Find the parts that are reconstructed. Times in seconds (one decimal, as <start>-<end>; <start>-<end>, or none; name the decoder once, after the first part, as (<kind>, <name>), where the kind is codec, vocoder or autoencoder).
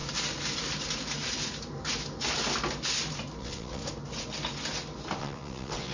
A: 3.4-3.8 (vocoder, WaveNeXt); 5.2-5.9